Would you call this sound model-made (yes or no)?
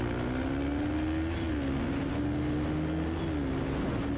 no